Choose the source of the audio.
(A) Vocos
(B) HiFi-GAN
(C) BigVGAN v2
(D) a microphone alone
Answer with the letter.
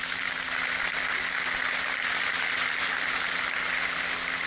D